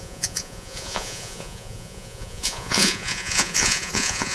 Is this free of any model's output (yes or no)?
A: no